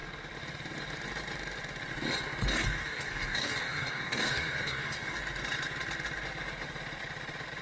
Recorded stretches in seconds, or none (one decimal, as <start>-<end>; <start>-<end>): 0.0-2.6; 5.2-7.6

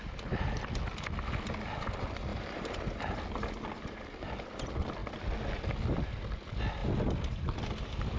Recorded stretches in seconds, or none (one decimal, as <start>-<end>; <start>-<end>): 0.0-2.3; 3.2-6.8; 7.4-8.2

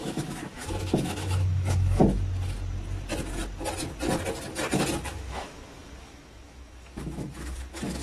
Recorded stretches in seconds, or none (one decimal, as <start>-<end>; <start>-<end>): 2.0-5.1